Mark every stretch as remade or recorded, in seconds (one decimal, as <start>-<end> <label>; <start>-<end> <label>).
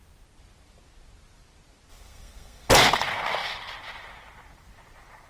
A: 0.0-1.9 recorded; 1.9-2.7 remade; 2.7-5.3 recorded